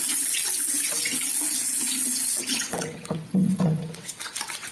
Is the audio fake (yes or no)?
yes